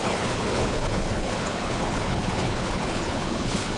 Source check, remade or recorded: remade